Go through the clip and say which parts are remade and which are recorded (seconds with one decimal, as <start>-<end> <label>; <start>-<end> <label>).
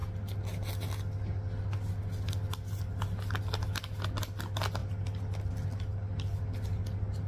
0.0-7.3 recorded